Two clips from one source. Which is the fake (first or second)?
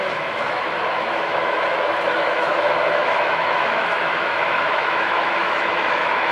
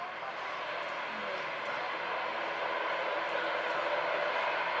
first